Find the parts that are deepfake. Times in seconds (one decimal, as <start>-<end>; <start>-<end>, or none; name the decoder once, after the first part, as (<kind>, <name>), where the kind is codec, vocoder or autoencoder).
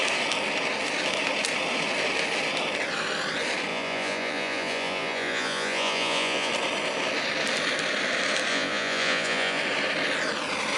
3.7-6.5 (vocoder, Vocos); 8.5-9.6